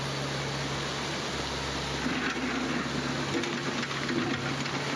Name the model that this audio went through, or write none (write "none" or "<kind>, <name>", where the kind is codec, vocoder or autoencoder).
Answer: none